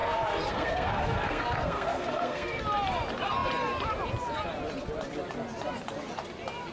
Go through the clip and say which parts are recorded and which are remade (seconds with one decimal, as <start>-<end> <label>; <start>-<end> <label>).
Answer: 0.0-2.6 remade; 2.6-6.7 recorded